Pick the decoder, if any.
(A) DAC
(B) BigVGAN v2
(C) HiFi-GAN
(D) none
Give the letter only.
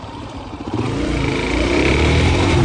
B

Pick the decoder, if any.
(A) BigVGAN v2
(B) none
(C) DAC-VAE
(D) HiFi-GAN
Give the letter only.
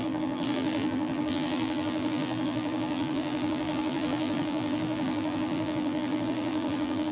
A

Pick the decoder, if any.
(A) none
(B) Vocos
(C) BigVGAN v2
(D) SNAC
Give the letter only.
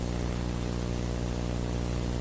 A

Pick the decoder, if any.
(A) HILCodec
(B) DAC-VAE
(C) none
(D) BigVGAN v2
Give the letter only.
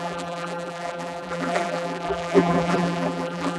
D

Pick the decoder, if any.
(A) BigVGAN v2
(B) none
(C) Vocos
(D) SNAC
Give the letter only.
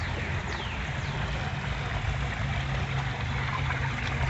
B